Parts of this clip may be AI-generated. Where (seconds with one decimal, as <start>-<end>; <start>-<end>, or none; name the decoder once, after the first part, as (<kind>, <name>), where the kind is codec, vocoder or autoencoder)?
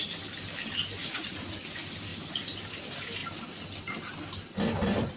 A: 1.0-1.6 (vocoder, Vocos)